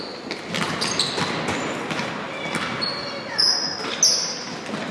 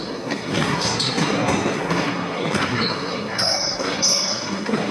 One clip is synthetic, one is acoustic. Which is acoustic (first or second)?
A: first